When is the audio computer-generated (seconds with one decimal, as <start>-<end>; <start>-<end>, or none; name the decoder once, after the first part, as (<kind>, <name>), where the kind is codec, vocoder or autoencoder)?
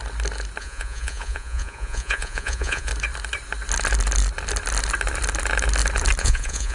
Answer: 0.6-2.9 (vocoder, Vocos); 6.2-6.7